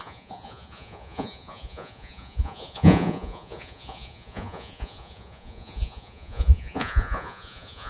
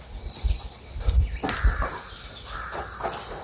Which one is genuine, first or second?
second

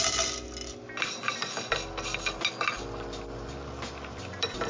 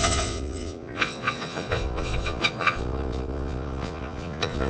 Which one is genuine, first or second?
first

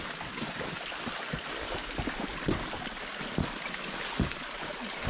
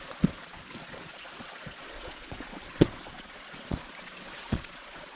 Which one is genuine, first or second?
first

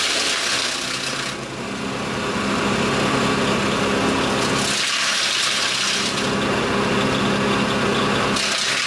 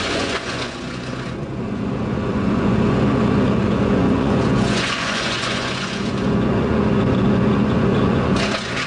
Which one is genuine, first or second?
first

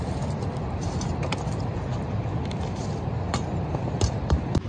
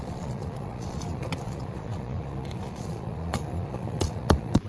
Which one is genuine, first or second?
first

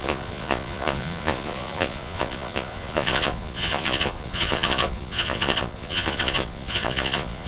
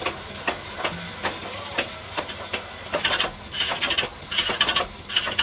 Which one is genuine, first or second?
second